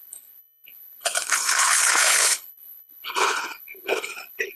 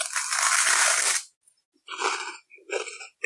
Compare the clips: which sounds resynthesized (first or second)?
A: first